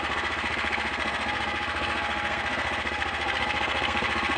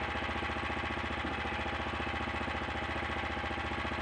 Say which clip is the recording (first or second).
second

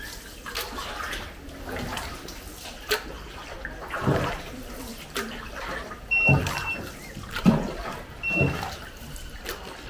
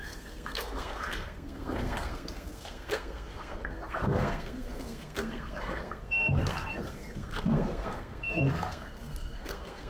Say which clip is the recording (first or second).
first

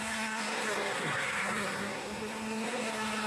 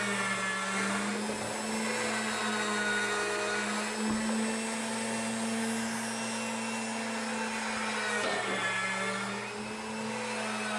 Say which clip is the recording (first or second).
second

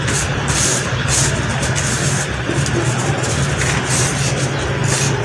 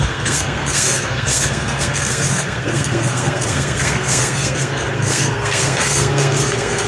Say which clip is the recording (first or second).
first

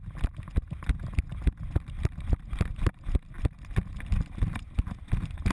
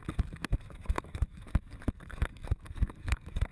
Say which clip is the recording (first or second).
first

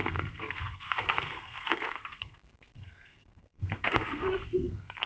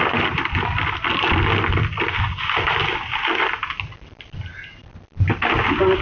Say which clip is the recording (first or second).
second